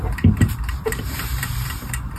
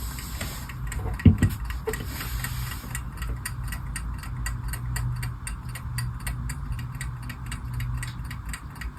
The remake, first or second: first